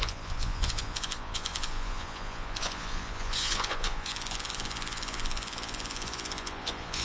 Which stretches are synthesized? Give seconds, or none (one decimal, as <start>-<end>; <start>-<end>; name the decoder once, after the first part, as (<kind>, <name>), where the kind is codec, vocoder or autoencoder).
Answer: 0.0-7.0 (vocoder, Vocos)